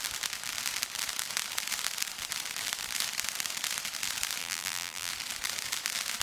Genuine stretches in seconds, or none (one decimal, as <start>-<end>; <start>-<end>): 0.0-4.4; 5.1-6.2